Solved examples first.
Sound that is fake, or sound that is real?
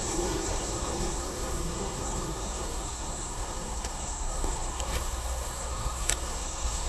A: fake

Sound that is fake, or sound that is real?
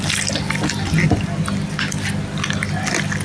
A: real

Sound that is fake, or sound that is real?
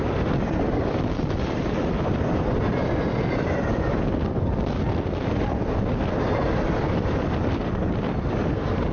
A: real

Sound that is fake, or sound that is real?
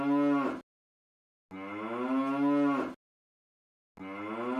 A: real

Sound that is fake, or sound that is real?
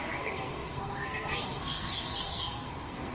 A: fake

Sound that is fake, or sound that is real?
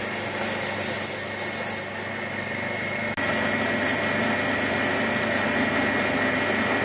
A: real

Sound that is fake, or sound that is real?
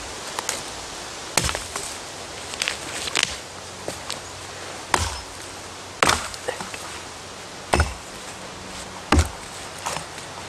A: real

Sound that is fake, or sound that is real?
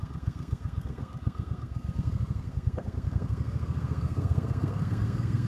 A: fake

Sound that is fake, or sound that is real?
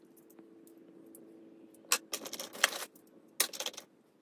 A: real